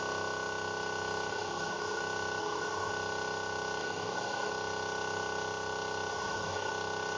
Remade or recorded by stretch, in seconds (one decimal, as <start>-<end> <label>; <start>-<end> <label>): 0.0-1.3 recorded; 1.3-2.0 remade; 2.0-2.4 recorded; 2.4-2.9 remade; 2.9-3.8 recorded; 3.8-4.5 remade; 4.5-6.1 recorded; 6.1-6.7 remade; 6.7-7.2 recorded